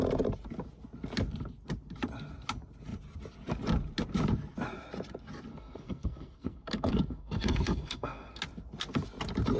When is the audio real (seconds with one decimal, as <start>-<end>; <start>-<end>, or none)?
0.0-5.5; 8.4-9.6